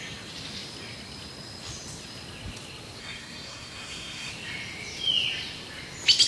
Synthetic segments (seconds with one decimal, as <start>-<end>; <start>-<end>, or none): 3.0-4.3